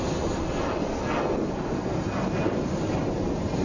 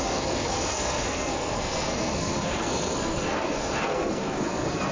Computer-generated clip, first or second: second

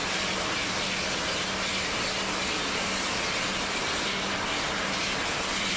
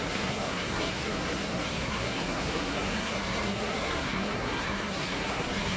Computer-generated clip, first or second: second